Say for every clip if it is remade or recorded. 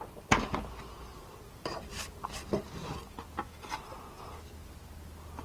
recorded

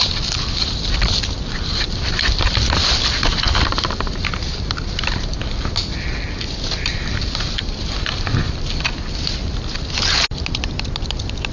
recorded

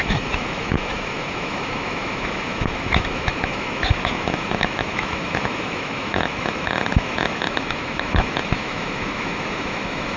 remade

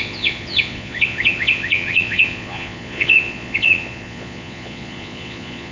remade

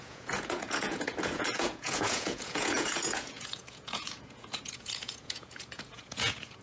remade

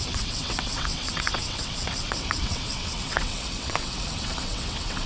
remade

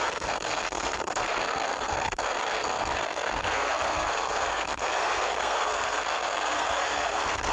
remade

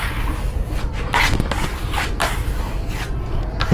recorded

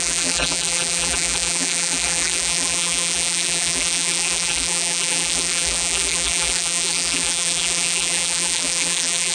remade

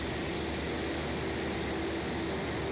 recorded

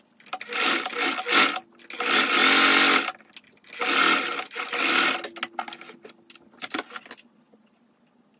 recorded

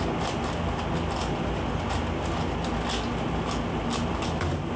recorded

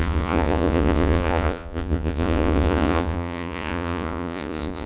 remade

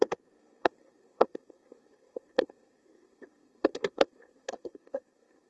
remade